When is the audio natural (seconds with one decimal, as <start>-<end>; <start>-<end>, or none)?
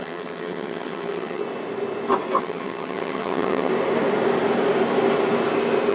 1.4-2.4; 3.7-5.9